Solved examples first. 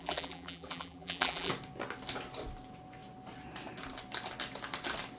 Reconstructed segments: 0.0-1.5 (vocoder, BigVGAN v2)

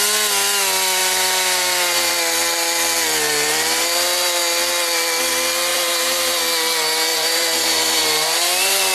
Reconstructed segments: 1.0-2.1 (vocoder, BigVGAN v2); 5.7-6.4; 7.1-8.9

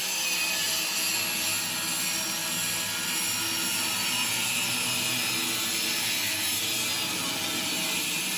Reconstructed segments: 0.0-0.9 (vocoder, BigVGAN v2)

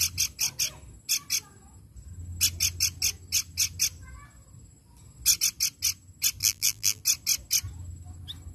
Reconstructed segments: 6.4-7.0 (vocoder, BigVGAN v2)

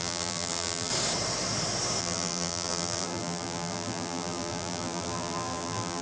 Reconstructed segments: 0.0-0.9 (vocoder, BigVGAN v2); 2.0-6.0

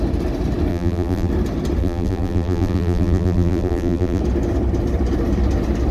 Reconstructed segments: 0.7-1.3 (vocoder, BigVGAN v2); 1.8-4.2